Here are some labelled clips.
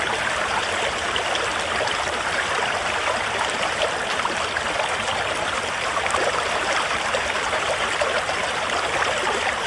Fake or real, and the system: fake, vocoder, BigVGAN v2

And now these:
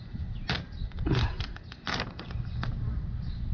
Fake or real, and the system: real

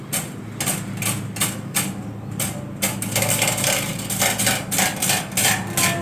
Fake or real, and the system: real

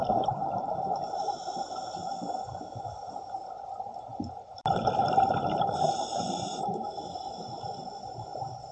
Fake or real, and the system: fake, vocoder, BigVGAN v2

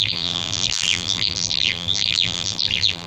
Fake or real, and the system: fake, vocoder, BigVGAN v2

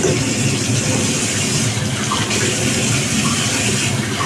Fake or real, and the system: real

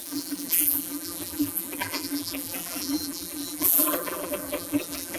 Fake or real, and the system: fake, vocoder, BigVGAN v2